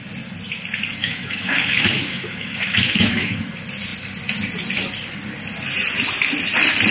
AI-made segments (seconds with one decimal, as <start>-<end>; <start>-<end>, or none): 1.0-3.5